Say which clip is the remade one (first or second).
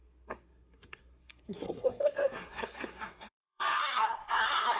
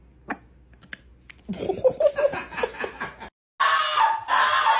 first